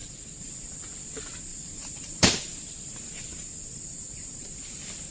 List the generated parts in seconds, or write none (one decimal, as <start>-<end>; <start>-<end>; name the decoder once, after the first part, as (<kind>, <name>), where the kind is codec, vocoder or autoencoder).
0.0-0.8 (vocoder, BigVGAN v2); 1.5-4.4

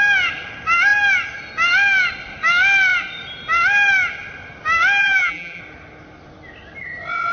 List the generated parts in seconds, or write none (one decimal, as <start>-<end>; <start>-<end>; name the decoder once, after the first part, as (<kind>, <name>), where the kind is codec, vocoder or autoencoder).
5.0-5.6 (vocoder, BigVGAN v2)

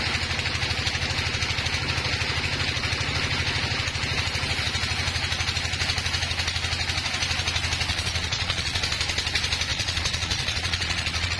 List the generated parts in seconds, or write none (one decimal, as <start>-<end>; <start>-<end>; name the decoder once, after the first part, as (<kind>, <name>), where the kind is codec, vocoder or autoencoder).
7.9-8.8 (vocoder, Vocos); 9.7-11.4

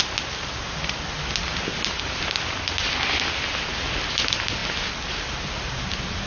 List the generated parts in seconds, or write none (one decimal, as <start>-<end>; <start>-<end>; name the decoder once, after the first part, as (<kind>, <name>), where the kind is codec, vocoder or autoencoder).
none

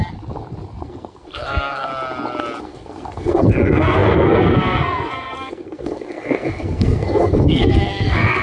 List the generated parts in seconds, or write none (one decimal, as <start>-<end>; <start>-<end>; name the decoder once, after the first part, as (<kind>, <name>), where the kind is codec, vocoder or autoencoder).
0.8-1.9 (codec, SNAC); 2.6-8.4

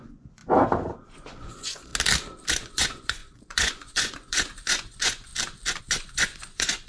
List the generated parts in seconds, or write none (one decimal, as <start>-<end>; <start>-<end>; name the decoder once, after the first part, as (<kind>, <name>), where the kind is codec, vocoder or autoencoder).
0.0-0.4 (vocoder, Vocos); 1.0-1.9; 2.5-5.3; 5.8-6.9

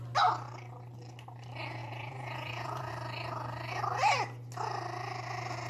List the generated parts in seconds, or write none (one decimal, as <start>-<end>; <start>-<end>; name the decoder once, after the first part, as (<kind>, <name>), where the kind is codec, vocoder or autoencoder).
1.8-2.9 (vocoder, Vocos)